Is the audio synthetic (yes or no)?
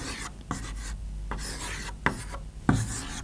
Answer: no